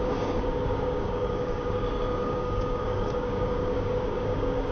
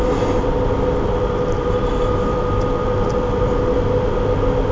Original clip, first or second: second